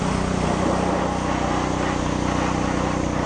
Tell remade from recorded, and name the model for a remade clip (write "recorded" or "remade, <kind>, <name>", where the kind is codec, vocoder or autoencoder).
recorded